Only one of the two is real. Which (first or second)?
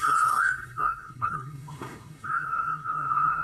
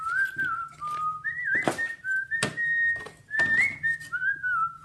second